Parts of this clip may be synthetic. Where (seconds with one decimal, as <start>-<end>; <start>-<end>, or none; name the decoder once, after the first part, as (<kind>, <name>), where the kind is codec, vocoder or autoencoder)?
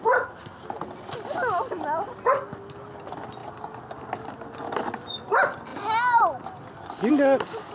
none